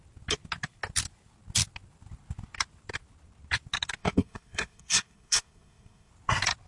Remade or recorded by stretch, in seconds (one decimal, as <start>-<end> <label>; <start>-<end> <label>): 0.0-4.0 recorded; 4.0-6.1 remade; 6.1-6.7 recorded